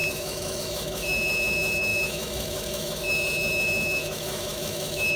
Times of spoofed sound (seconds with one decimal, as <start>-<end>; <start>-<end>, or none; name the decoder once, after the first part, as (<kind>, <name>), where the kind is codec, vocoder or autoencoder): 0.0-5.2 (autoencoder, DAC-VAE)

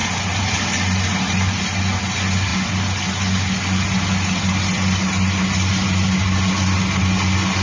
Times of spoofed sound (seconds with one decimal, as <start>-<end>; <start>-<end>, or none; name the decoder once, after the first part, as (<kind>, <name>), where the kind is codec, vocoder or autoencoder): none

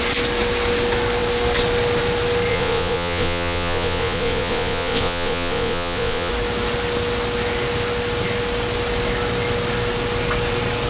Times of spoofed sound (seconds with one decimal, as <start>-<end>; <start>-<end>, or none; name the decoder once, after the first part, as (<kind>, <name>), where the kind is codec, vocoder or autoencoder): 2.5-6.3 (vocoder, Vocos)

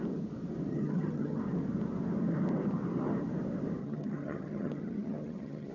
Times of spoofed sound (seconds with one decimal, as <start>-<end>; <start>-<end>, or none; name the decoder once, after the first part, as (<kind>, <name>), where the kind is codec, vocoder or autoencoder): 0.7-1.4 (vocoder, HiFi-GAN); 3.8-5.7

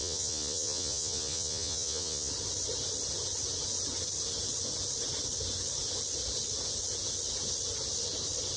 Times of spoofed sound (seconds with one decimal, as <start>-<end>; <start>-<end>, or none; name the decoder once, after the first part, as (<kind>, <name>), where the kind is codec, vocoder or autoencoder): 0.0-2.3 (vocoder, Vocos)